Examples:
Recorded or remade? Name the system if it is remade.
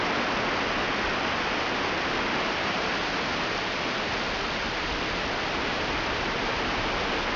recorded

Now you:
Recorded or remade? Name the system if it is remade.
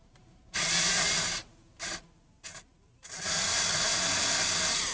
recorded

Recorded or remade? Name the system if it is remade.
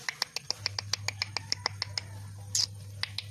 recorded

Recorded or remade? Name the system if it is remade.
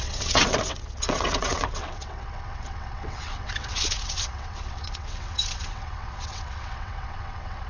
remade, vocoder, WaveNeXt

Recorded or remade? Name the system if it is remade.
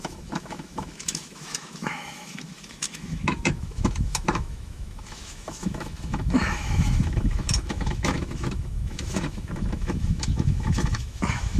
remade, autoencoder, DAC-VAE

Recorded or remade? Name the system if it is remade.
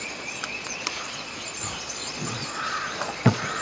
remade, vocoder, Vocos